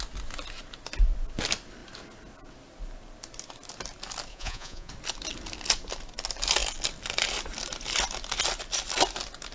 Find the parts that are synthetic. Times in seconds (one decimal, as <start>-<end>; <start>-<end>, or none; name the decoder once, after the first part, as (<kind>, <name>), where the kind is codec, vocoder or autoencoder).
4.3-4.9 (vocoder, Vocos)

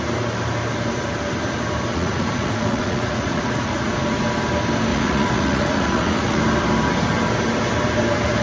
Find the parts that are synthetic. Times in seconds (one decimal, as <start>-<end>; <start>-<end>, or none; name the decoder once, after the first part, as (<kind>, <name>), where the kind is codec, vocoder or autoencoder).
1.9-3.9 (vocoder, Vocos); 4.9-6.4

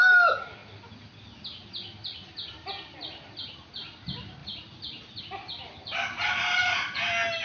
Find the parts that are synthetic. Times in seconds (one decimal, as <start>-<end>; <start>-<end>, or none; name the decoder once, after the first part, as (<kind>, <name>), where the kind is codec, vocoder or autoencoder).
none

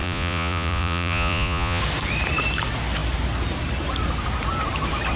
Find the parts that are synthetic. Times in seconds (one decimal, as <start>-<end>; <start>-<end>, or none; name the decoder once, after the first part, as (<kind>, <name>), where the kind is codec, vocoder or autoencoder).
0.0-1.8 (vocoder, Vocos)